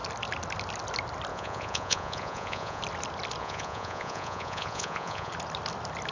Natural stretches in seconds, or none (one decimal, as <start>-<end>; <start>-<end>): 0.0-1.3; 2.8-3.4; 5.3-6.1